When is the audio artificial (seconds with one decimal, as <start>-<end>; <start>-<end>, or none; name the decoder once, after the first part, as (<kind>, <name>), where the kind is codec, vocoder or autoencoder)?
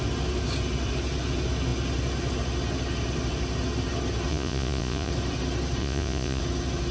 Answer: 4.3-5.1 (vocoder, Vocos); 5.8-6.4